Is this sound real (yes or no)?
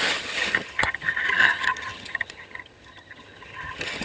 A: no